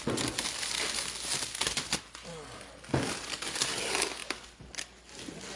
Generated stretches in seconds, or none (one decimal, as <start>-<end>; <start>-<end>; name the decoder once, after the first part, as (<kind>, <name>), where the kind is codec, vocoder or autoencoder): none